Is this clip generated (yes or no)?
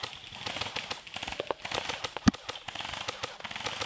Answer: no